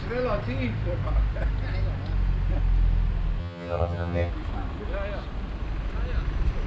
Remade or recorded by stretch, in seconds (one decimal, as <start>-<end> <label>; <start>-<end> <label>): 0.0-3.4 recorded; 3.4-4.3 remade; 4.3-6.7 recorded